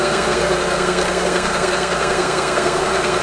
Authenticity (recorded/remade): remade